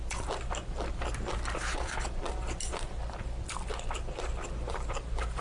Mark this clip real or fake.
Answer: real